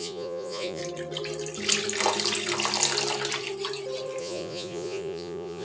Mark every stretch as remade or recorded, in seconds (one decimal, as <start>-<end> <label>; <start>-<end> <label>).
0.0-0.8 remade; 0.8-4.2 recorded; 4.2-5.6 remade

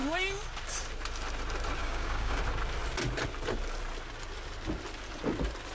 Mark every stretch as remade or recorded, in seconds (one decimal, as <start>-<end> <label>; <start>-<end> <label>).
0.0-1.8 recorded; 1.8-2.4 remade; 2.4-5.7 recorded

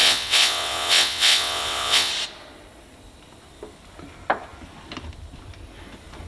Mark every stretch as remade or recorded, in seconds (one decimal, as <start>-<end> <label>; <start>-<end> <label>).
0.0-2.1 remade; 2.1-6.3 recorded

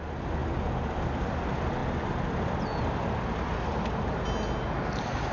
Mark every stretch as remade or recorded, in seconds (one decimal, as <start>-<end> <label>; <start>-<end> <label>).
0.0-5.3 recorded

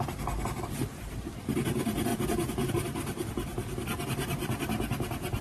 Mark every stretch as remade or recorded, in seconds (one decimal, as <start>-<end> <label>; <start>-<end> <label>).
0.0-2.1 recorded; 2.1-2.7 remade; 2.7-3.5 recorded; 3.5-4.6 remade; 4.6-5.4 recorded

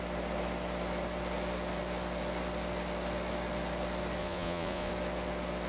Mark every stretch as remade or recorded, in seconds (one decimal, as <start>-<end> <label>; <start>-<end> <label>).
0.0-4.2 recorded; 4.2-4.9 remade; 4.9-5.7 recorded

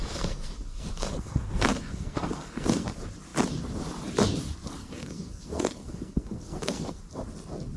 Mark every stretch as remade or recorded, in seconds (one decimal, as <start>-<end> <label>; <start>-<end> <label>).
0.0-2.9 remade; 2.9-4.8 recorded; 4.8-7.0 remade; 7.0-7.8 recorded